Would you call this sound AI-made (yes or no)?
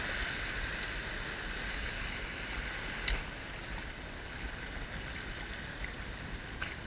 no